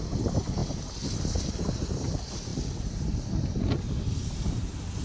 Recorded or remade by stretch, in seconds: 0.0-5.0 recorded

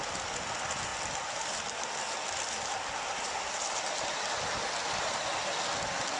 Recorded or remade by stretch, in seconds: 0.0-6.2 recorded

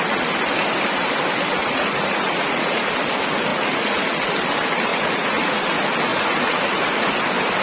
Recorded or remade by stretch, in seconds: 0.0-1.6 recorded; 1.6-2.9 remade; 2.9-3.5 recorded; 3.5-4.3 remade; 4.3-4.9 recorded; 4.9-5.6 remade; 5.6-6.1 recorded; 6.1-7.1 remade; 7.1-7.6 recorded